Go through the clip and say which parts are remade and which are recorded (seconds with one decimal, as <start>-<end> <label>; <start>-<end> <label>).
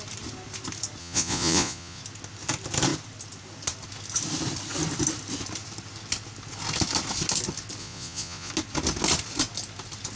0.0-1.0 recorded; 1.0-2.0 remade; 2.0-7.8 recorded; 7.8-8.5 remade; 8.5-10.2 recorded